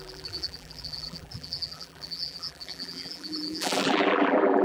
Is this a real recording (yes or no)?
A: no